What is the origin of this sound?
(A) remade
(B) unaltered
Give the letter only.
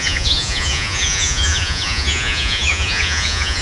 A